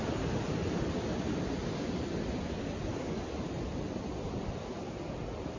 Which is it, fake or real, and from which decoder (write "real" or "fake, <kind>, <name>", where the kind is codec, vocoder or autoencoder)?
real